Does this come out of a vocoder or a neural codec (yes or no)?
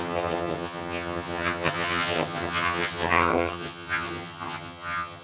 yes